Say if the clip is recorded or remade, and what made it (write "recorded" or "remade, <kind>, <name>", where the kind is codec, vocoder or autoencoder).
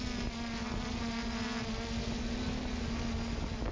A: recorded